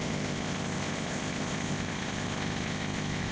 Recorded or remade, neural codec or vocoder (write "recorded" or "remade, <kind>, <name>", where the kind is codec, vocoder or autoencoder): remade, codec, ZipCodec